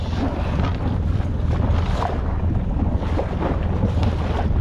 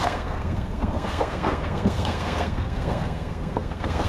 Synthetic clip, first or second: second